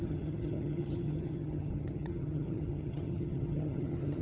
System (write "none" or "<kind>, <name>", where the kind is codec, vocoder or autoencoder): vocoder, HiFi-GAN